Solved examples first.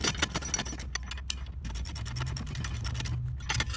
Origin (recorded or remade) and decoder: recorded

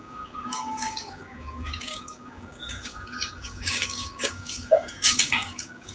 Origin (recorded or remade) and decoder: remade, codec, DAC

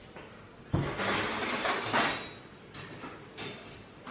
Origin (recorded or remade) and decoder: recorded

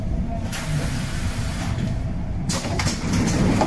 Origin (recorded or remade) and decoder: recorded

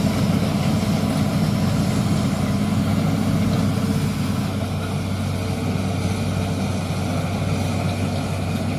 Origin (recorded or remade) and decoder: recorded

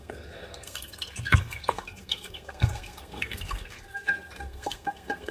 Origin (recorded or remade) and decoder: remade, codec, SNAC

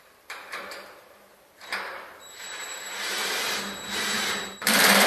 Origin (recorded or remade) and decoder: remade, vocoder, BigVGAN v2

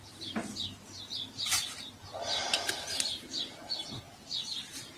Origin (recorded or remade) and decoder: recorded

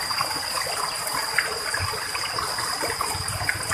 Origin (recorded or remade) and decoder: recorded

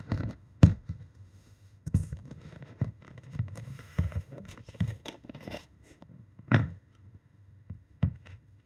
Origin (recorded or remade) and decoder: remade, autoencoder, DAC-VAE